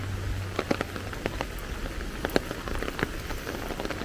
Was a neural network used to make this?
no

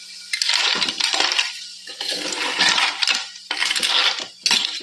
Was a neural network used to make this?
no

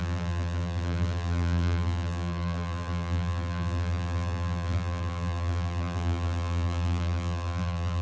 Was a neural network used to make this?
yes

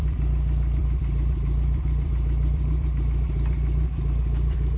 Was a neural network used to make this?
yes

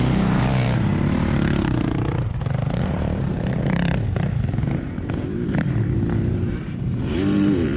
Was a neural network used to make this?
yes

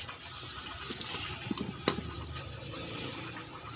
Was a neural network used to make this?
yes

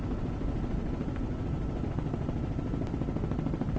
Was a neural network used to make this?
no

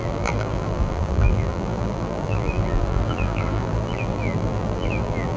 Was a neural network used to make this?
yes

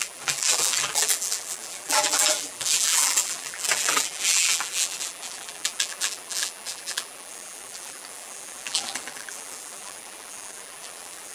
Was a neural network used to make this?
yes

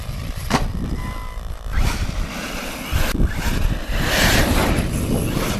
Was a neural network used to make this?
yes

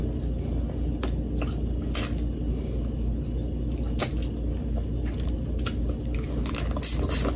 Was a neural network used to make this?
no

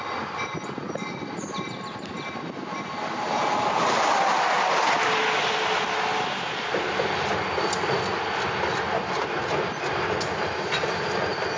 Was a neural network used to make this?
no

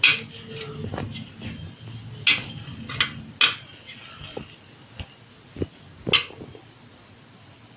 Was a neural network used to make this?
no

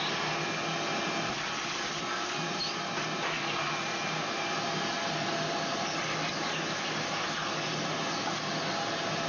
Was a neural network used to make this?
no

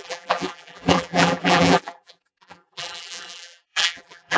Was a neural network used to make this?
yes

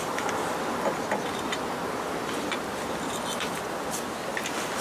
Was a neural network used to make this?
no